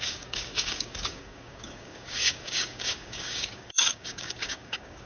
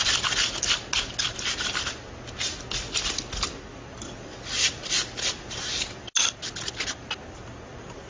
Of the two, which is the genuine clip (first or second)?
second